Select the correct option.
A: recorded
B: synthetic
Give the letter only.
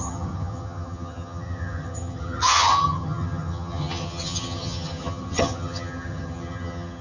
B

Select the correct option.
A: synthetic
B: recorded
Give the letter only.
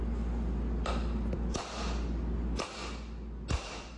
B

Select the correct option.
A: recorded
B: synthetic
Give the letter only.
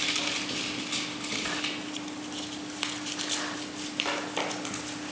A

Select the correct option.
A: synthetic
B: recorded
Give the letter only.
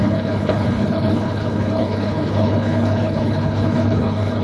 A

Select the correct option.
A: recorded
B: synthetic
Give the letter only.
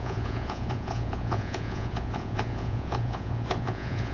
B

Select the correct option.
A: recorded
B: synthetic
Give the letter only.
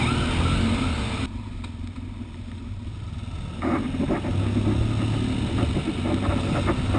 A